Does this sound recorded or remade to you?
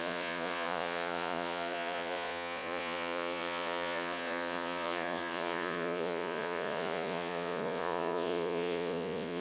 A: remade